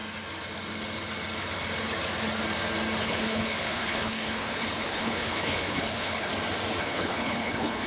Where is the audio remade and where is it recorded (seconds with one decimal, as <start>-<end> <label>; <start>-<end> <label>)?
0.0-3.0 recorded; 3.0-6.3 remade; 6.3-6.8 recorded; 6.8-7.9 remade